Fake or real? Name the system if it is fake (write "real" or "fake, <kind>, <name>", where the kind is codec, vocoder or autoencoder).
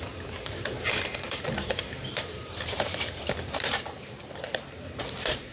fake, vocoder, BigVGAN v2